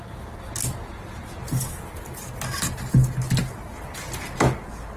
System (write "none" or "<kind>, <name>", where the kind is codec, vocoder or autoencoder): none